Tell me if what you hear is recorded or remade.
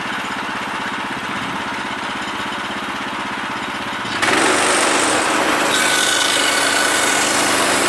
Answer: recorded